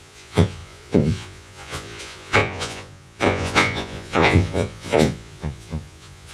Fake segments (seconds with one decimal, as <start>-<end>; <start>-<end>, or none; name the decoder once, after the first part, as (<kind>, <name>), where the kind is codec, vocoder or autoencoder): 0.0-6.3 (vocoder, Vocos)